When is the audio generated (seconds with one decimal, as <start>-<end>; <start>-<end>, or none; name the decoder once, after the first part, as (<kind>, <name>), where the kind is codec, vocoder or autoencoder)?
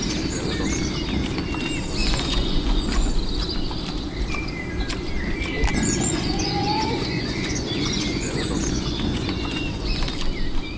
2.0-3.1 (vocoder, Vocos); 5.7-10.1